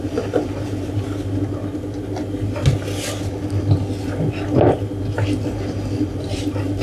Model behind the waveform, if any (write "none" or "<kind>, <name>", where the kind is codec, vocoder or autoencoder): none